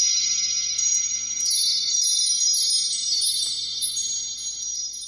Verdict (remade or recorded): remade